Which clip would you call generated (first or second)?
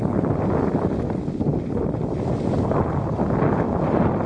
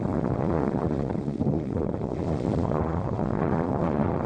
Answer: second